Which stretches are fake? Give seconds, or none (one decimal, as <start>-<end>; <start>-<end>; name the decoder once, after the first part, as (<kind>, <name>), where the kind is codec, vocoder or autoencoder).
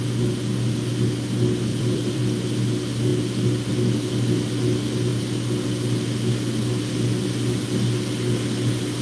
1.7-2.2 (vocoder, BigVGAN v2)